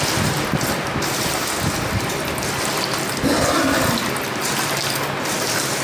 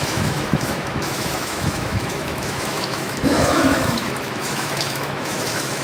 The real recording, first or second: first